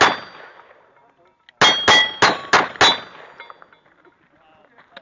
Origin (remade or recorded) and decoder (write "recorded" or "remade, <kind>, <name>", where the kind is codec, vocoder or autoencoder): recorded